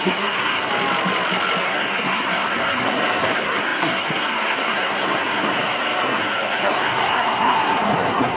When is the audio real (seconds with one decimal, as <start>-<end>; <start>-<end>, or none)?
0.7-1.6

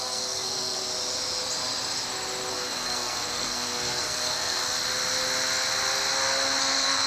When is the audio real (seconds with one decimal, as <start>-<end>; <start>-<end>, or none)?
0.9-2.5; 4.6-6.6

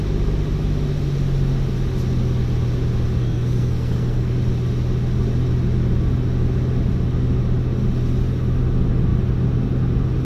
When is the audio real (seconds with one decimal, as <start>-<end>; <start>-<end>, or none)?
0.0-3.2; 4.3-10.2

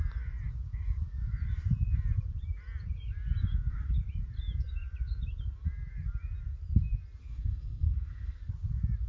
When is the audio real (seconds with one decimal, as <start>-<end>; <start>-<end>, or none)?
0.0-7.2; 8.5-9.1

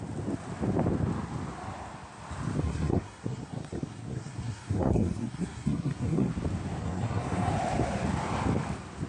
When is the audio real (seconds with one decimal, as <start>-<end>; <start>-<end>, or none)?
0.0-2.6; 6.3-6.8; 7.5-9.1

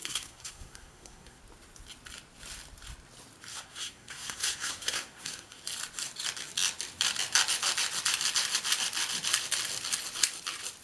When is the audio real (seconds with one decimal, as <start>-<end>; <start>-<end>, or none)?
1.4-3.5; 5.6-10.8

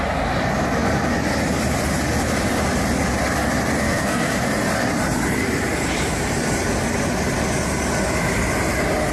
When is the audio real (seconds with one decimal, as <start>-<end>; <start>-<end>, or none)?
0.0-3.7; 4.4-9.1

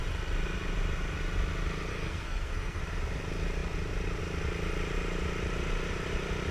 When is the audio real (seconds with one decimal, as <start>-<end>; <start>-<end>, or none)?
0.0-1.9; 2.8-6.5